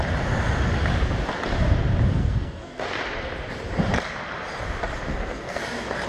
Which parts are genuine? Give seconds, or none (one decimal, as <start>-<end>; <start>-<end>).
0.0-2.2; 2.8-5.1; 5.6-6.1